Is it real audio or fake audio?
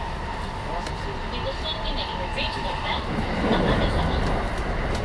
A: real